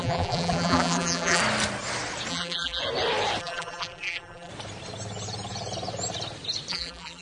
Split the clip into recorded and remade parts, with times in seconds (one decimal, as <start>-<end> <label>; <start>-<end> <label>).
0.0-1.4 remade; 1.4-2.3 recorded; 2.3-2.8 remade; 2.8-3.4 recorded; 3.4-4.5 remade; 4.5-6.7 recorded; 6.7-7.2 remade